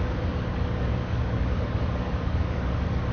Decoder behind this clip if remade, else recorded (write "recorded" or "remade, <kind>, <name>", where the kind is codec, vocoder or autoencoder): remade, codec, DAC